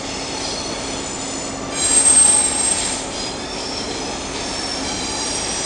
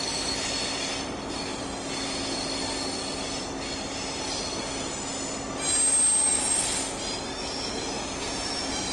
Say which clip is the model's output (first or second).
first